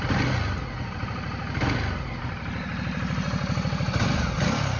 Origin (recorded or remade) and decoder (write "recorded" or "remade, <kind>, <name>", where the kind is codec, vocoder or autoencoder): recorded